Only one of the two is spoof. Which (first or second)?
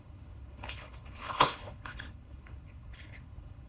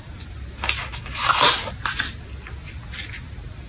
first